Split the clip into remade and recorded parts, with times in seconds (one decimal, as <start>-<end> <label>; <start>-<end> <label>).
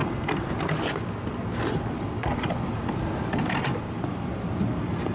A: 0.0-1.9 recorded; 1.9-5.1 remade